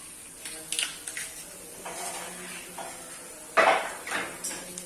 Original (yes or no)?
yes